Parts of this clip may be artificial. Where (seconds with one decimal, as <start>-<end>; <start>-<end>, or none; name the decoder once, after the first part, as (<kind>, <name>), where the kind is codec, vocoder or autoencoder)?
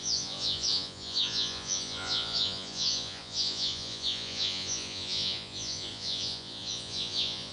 0.0-7.5 (vocoder, Vocos)